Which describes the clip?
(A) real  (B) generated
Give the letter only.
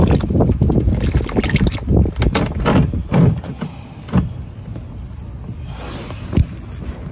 A